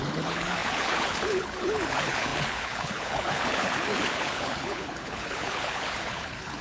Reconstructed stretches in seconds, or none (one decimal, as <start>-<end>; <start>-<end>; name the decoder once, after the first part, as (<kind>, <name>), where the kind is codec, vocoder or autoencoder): 0.0-6.6 (codec, HILCodec)